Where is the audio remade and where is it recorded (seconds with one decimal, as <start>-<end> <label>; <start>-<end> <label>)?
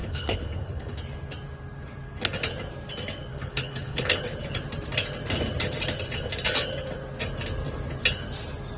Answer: 0.0-1.0 remade; 1.0-3.3 recorded; 3.3-4.2 remade; 4.2-8.8 recorded